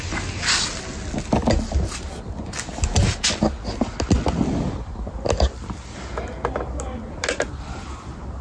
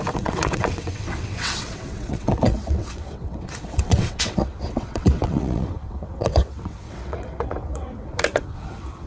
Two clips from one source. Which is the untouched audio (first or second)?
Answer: first